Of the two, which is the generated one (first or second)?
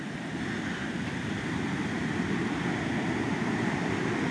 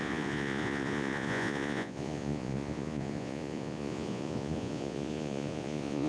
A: second